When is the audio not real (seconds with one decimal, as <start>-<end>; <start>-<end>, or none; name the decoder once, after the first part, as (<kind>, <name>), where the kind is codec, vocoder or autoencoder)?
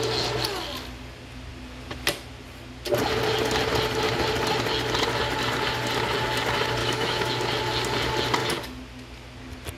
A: 6.8-7.3 (autoencoder, DAC-VAE)